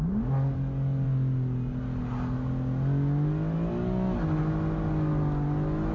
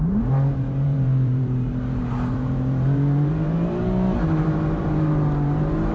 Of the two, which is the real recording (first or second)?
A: first